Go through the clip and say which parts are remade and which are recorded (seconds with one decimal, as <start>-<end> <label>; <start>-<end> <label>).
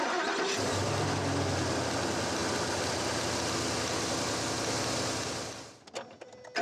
0.0-6.6 recorded